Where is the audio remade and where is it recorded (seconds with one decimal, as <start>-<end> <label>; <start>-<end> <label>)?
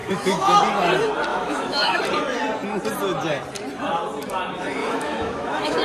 0.0-0.6 remade; 0.6-1.3 recorded; 1.3-2.0 remade; 2.0-4.8 recorded; 4.8-5.8 remade